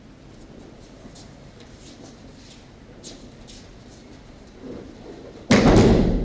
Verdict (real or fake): real